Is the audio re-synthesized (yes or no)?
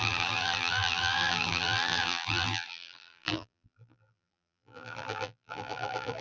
yes